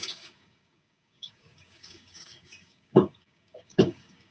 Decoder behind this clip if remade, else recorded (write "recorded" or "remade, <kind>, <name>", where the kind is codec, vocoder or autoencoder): remade, codec, DAC